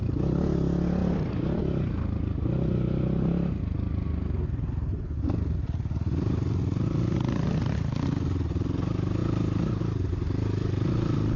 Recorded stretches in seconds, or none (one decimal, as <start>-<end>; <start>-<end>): 0.0-1.0; 1.6-11.4